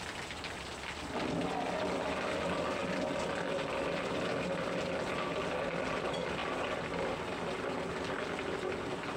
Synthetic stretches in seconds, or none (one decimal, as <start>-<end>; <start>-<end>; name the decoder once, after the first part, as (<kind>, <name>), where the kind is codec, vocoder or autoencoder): none